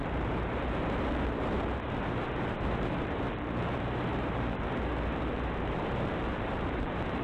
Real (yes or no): no